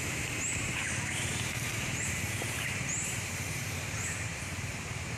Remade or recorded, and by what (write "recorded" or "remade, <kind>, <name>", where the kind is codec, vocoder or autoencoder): remade, vocoder, BigVGAN v2